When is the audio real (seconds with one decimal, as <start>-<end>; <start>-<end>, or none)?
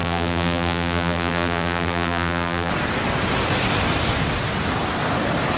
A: 2.7-5.6